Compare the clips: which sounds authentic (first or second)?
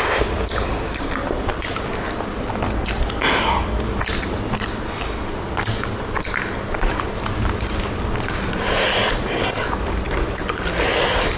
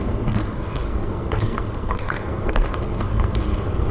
first